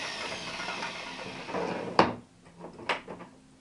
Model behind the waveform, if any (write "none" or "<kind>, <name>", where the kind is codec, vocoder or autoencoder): none